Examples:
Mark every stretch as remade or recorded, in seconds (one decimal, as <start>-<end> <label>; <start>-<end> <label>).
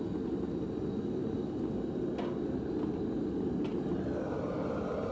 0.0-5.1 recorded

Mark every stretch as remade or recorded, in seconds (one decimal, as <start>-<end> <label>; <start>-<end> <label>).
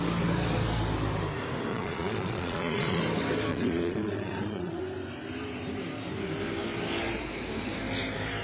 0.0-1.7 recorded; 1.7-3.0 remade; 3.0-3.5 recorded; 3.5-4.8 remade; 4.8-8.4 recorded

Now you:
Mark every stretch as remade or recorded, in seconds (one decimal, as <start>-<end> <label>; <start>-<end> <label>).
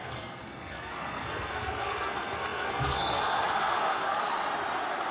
0.0-4.2 remade; 4.2-5.1 recorded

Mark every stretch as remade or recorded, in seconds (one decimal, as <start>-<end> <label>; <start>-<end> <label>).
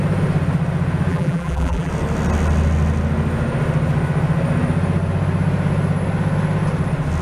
0.0-1.1 recorded; 1.1-1.9 remade; 1.9-7.2 recorded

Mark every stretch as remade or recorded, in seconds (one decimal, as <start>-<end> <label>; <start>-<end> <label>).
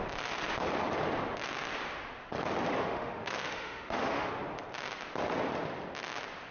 0.0-2.8 recorded; 2.8-4.3 remade; 4.3-6.5 recorded